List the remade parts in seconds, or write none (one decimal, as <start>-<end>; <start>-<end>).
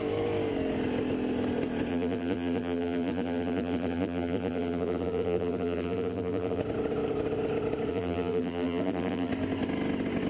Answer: 1.9-6.6; 7.9-9.3